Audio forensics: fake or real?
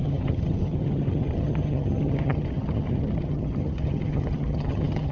fake